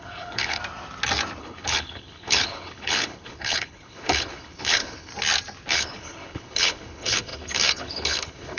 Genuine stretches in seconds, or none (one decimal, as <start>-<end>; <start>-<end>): 0.6-1.4; 5.1-5.7